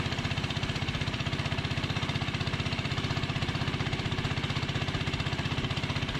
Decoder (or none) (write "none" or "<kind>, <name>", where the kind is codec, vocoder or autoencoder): vocoder, BigVGAN v2